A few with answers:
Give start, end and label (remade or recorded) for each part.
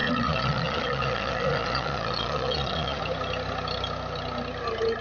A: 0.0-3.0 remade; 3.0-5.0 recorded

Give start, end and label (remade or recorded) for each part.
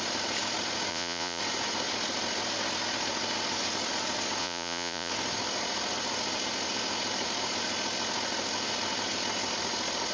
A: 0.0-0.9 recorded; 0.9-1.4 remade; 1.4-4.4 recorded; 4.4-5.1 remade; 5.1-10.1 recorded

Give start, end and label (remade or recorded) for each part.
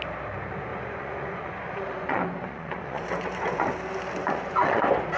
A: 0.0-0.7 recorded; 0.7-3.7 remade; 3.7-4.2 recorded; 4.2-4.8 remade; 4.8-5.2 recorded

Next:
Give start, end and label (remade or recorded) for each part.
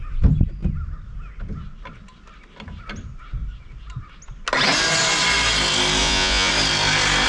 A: 0.0-6.0 recorded; 6.0-6.5 remade; 6.5-7.3 recorded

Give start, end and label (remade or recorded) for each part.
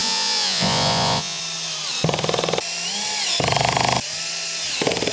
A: 0.0-1.4 remade; 1.4-5.1 recorded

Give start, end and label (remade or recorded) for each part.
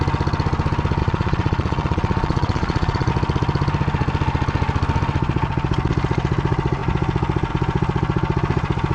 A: 0.0-1.0 recorded; 1.0-3.1 remade; 3.1-8.9 recorded